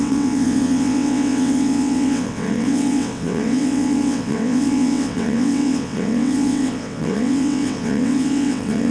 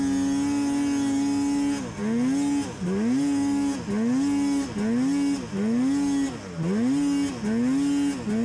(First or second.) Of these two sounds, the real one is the second